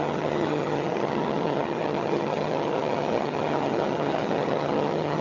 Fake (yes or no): yes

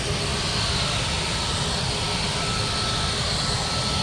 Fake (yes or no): no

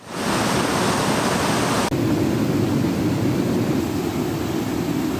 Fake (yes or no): no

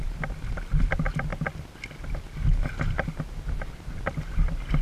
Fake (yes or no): no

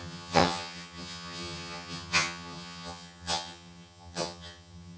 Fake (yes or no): yes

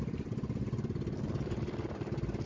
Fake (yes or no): no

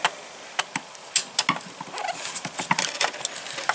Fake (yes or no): no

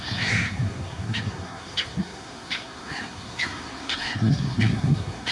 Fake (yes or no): yes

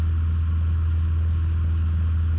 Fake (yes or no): no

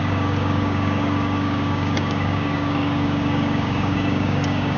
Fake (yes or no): yes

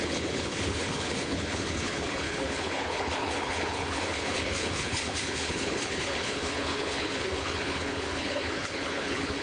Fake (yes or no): yes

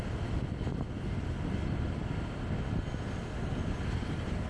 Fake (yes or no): no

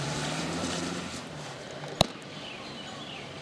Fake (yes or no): yes